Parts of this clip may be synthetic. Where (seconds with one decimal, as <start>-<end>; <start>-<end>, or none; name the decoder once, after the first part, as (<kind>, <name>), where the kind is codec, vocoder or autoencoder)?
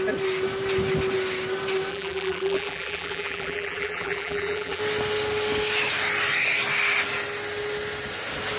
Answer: 1.9-4.8 (vocoder, BigVGAN v2)